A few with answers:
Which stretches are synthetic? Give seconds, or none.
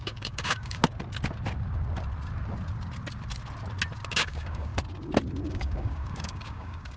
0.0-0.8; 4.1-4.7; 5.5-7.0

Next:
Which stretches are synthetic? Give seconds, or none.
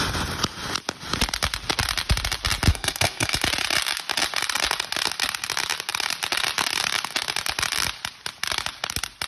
2.7-3.4